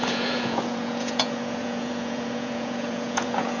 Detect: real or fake fake